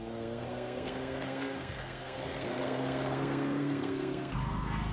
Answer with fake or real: fake